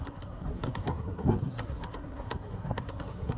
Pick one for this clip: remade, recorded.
remade